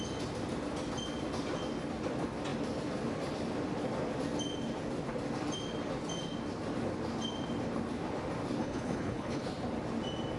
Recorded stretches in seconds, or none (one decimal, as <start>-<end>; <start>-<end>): 0.0-8.6; 9.4-10.4